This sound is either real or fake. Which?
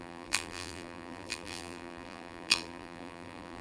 fake